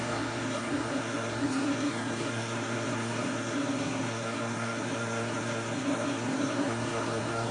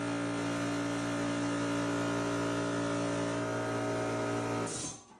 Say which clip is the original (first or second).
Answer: second